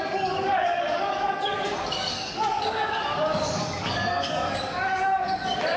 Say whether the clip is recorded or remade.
remade